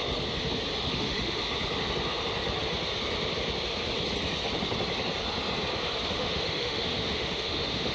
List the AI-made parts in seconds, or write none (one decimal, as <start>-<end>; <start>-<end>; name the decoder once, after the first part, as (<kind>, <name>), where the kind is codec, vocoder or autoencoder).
0.9-1.4 (autoencoder, DAC-VAE); 6.1-7.9